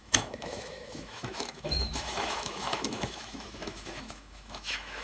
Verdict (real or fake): fake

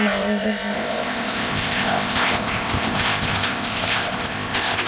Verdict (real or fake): fake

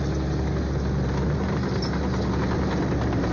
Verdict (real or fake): real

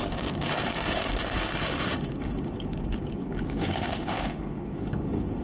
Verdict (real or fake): fake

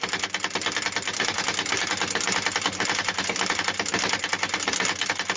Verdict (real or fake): real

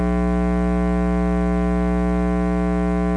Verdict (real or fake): real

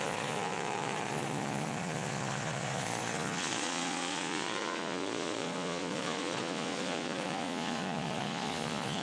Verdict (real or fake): fake